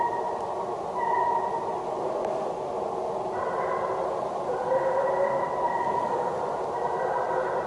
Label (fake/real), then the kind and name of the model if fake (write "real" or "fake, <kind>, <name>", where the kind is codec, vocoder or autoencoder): real